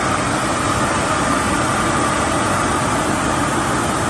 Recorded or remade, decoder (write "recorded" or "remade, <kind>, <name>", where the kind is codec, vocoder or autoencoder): recorded